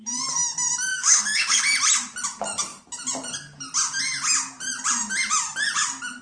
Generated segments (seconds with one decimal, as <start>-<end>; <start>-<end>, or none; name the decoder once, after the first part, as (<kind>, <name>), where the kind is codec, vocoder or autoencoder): 0.9-1.6 (codec, DAC)